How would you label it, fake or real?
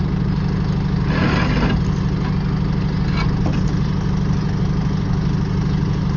real